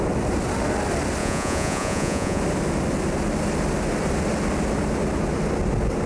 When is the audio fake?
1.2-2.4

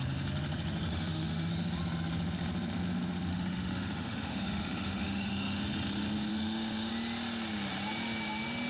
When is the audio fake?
0.9-1.5; 3.3-5.6; 6.3-6.9

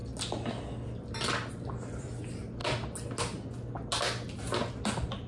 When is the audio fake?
none

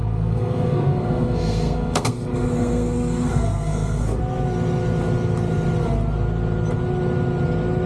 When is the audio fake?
0.0-4.2

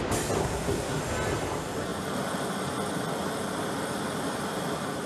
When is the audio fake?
0.4-1.0